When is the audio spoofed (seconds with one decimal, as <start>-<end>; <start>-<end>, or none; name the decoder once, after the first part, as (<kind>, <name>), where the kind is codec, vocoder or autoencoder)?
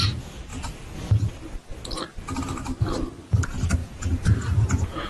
3.8-5.1 (vocoder, Vocos)